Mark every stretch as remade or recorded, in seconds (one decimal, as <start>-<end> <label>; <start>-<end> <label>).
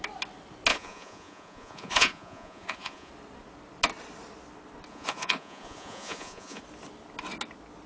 0.0-0.7 recorded; 0.7-3.1 remade; 3.1-4.9 recorded; 4.9-6.6 remade; 6.6-7.9 recorded